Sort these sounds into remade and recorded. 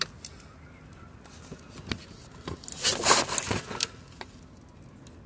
recorded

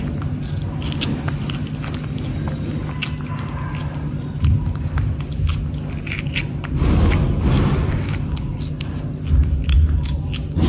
recorded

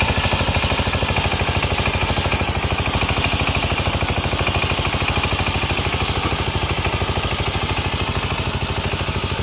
recorded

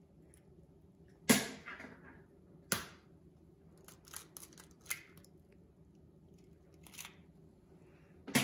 recorded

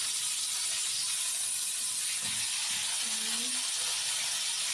recorded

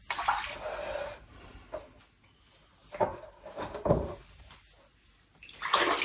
recorded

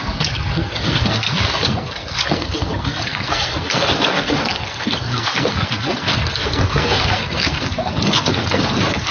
remade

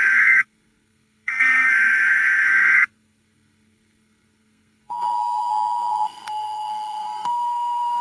remade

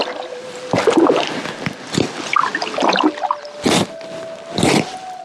recorded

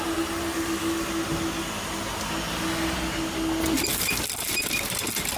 recorded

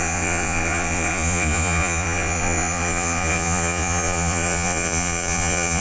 remade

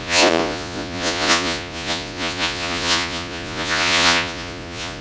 remade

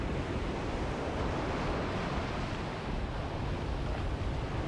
recorded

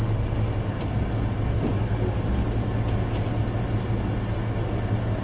recorded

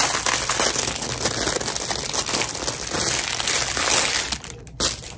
recorded